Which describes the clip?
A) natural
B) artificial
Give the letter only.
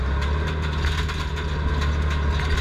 A